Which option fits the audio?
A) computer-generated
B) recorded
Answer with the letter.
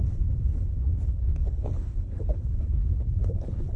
A